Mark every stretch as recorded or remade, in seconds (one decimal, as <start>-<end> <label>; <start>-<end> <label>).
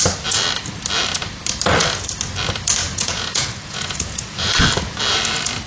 0.0-2.8 recorded; 2.8-4.5 remade; 4.5-5.7 recorded